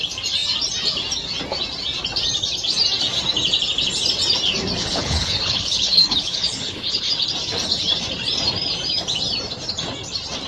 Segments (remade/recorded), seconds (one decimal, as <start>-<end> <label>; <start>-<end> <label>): 0.0-4.8 recorded; 4.8-7.1 remade; 7.1-10.5 recorded